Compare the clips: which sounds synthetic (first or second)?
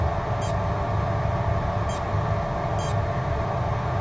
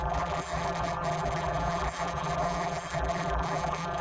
second